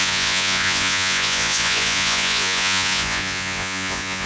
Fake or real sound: fake